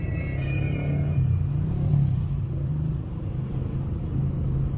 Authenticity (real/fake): real